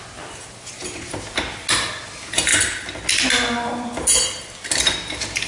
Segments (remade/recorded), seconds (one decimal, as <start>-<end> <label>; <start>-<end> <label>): 0.0-5.5 recorded